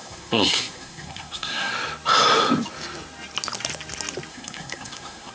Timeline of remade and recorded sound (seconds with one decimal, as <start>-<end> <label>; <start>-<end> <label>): 0.0-1.7 remade; 1.7-4.3 recorded; 4.3-5.3 remade